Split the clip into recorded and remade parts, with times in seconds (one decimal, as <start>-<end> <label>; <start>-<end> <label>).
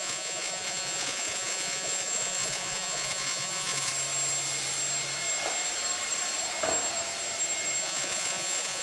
0.0-3.9 remade; 3.9-7.8 recorded; 7.8-8.8 remade